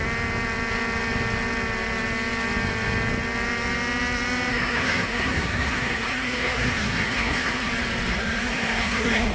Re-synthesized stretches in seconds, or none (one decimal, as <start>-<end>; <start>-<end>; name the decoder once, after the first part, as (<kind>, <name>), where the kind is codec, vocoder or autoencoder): 4.5-7.7 (codec, SNAC); 8.1-9.3